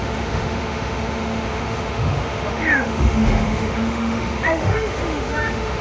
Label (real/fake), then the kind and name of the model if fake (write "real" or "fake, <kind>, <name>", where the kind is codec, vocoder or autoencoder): fake, autoencoder, DAC-VAE